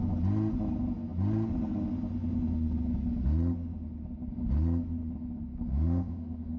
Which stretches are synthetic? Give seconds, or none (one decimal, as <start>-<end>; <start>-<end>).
5.7-6.6